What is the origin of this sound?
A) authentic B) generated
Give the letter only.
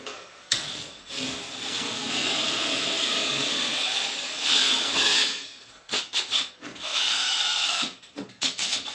B